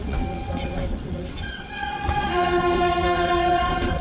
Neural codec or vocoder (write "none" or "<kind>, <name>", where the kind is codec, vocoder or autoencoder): vocoder, WaveNeXt